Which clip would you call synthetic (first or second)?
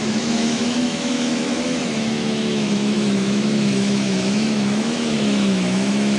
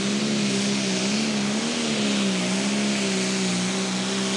first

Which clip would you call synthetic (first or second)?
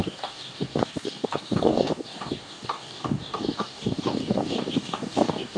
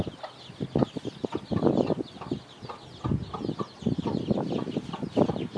first